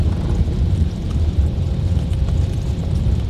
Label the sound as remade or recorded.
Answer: remade